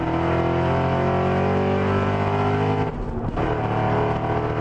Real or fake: real